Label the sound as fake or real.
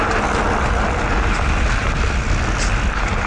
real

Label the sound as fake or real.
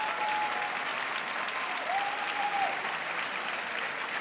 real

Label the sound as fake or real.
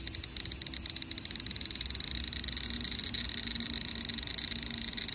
real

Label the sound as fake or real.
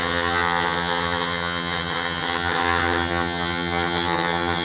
fake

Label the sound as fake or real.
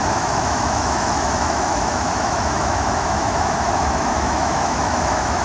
fake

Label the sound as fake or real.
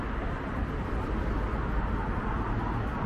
real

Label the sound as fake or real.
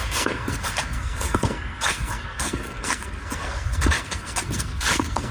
fake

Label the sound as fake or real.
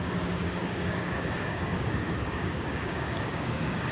fake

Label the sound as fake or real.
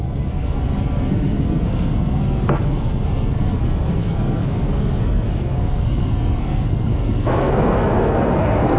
fake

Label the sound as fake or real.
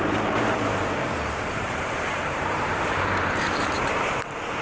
fake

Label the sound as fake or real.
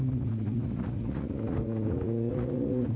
fake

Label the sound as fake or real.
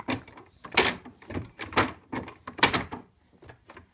fake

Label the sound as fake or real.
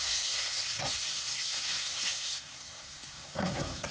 fake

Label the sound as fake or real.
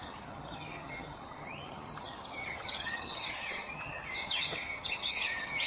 fake